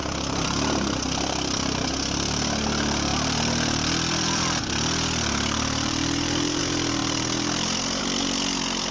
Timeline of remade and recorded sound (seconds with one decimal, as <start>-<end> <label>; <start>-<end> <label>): 0.0-8.9 remade